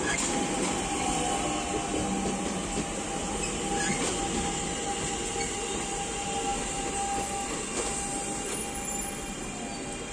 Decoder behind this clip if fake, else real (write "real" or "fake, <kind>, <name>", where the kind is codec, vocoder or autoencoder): real